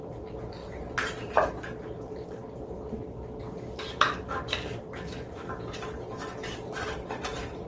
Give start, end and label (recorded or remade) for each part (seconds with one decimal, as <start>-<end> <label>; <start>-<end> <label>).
0.0-7.7 recorded